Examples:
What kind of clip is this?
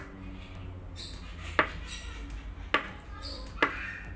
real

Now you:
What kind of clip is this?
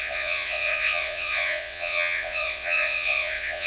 fake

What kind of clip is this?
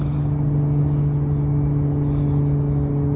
real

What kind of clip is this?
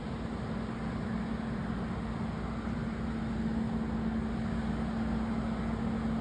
real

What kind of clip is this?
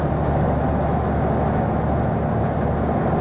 real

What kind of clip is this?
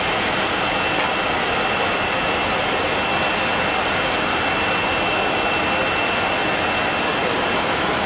real